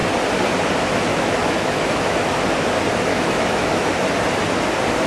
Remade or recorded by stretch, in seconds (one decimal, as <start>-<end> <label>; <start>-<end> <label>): 0.0-1.1 recorded; 1.1-2.3 remade; 2.3-3.1 recorded; 3.1-3.9 remade; 3.9-5.1 recorded